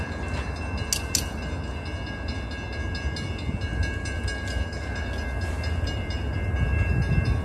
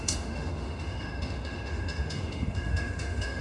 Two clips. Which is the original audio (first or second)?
first